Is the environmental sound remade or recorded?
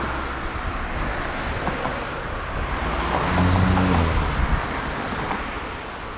recorded